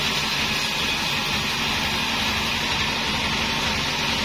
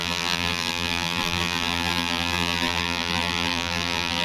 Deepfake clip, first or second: second